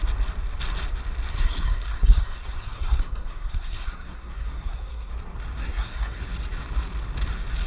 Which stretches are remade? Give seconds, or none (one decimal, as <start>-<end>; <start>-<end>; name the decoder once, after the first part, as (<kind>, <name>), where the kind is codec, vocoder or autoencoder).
1.3-5.1 (codec, SNAC); 5.6-6.2